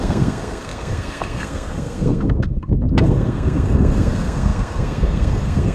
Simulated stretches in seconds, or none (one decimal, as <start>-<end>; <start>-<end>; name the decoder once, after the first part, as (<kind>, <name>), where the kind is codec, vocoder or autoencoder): 0.0-5.7 (codec, SNAC)